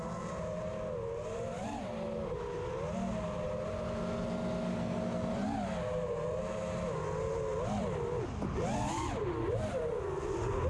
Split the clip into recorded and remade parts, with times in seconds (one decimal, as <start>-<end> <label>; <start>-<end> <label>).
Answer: 0.0-4.7 recorded; 4.7-5.3 remade; 5.3-10.7 recorded

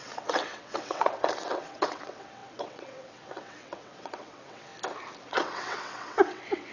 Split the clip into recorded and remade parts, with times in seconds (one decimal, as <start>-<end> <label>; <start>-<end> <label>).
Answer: 0.0-4.7 remade; 4.7-5.2 recorded; 5.2-6.7 remade